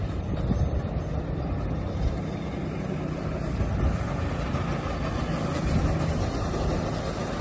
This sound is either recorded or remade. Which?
recorded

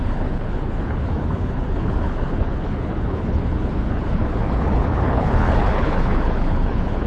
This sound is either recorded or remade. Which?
remade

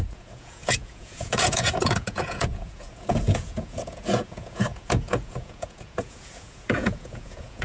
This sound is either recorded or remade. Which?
remade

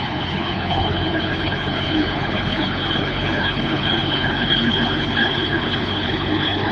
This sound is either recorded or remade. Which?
remade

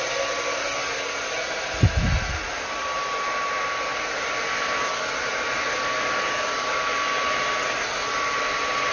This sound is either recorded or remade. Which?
recorded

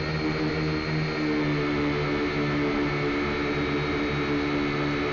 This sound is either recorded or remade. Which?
recorded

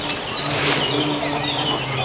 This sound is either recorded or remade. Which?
recorded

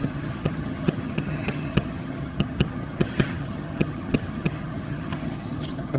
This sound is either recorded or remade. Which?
remade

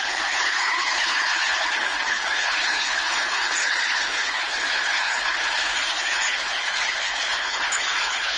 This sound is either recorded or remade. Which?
remade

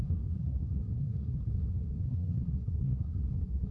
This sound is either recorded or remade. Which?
remade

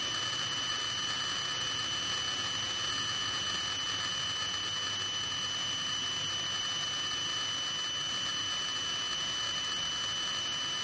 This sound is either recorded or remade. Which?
recorded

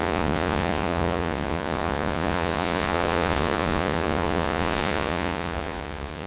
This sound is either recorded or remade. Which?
remade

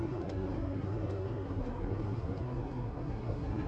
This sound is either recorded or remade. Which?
remade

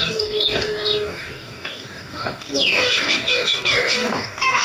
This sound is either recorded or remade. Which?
remade